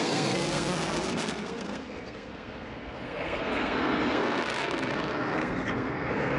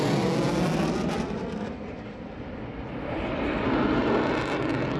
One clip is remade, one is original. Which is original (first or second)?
second